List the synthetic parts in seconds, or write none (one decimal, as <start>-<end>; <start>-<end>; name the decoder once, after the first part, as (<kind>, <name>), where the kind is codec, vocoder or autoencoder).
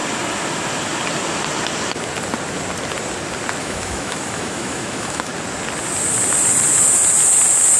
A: 3.6-5.3 (autoencoder, DAC-VAE)